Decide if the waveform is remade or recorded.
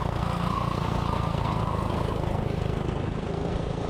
remade